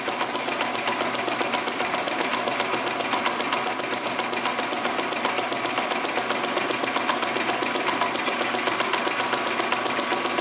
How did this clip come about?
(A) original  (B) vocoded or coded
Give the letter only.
A